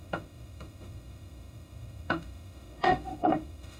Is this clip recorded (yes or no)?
no